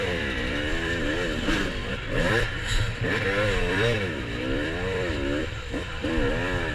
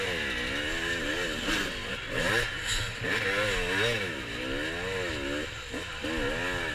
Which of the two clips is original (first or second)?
second